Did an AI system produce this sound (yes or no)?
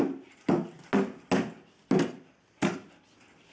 no